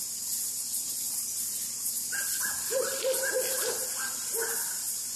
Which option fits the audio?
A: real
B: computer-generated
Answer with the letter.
A